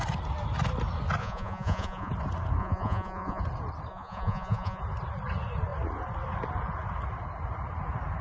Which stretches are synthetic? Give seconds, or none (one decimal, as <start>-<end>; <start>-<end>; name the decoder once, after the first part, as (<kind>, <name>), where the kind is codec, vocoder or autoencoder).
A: 1.2-2.1 (vocoder, Vocos); 2.6-3.4; 3.9-4.8

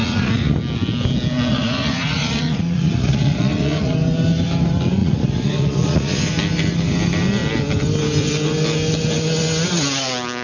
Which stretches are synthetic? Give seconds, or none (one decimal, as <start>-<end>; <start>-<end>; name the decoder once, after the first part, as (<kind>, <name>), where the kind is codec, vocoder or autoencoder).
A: 0.0-0.6 (vocoder, Vocos); 1.5-3.9; 5.0-6.2

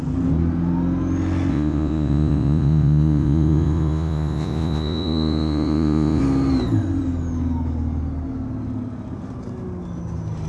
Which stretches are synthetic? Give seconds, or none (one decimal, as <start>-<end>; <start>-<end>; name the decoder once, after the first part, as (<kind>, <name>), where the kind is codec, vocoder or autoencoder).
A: 1.5-6.2 (vocoder, Vocos)